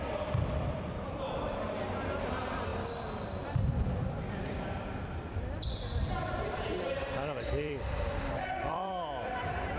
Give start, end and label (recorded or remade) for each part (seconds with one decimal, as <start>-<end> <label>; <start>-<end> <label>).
0.0-9.8 remade